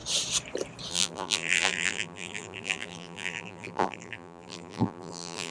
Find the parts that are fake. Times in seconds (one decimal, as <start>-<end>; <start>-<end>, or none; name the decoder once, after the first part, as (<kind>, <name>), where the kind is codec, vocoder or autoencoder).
0.9-5.5 (vocoder, BigVGAN v2)